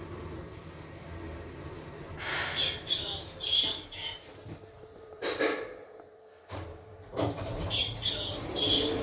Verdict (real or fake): fake